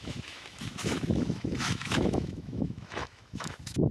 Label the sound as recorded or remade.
remade